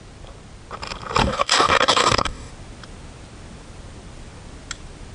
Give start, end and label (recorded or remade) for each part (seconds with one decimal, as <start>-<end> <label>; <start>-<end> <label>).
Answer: 0.0-1.2 recorded; 1.2-2.5 remade; 2.5-5.1 recorded

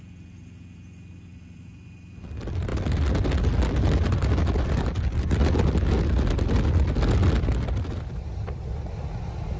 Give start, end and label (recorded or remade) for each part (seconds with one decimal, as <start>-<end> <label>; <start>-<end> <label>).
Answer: 0.0-9.6 recorded

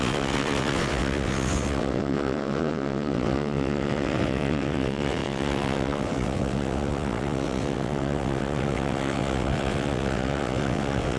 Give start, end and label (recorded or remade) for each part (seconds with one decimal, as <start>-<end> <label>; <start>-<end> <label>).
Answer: 0.0-11.2 remade

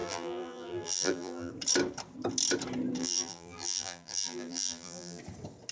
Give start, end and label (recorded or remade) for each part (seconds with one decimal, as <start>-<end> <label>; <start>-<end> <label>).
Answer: 0.0-1.5 remade; 1.5-3.0 recorded; 3.0-5.2 remade; 5.2-5.7 recorded

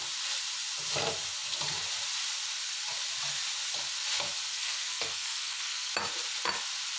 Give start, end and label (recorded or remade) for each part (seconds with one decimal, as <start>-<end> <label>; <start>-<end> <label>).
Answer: 0.0-4.5 recorded; 4.5-5.9 remade; 5.9-7.0 recorded

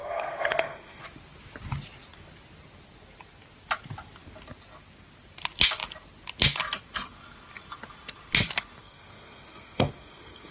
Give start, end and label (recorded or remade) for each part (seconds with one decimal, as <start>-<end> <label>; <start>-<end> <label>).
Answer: 0.0-1.0 remade; 1.0-8.8 recorded; 8.8-10.5 remade

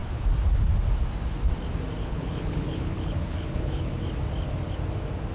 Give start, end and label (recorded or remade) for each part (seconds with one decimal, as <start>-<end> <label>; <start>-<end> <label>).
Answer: 0.0-2.0 recorded; 2.0-3.9 remade; 3.9-5.3 recorded